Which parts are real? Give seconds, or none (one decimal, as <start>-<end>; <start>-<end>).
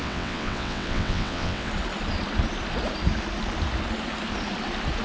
1.7-5.0